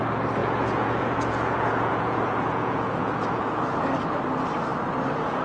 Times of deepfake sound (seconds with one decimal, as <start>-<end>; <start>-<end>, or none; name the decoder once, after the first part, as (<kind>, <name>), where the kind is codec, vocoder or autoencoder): 0.4-3.6 (vocoder, Vocos)